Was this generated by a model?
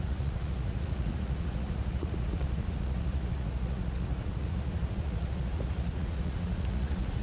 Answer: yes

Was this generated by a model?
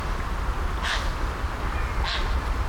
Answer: no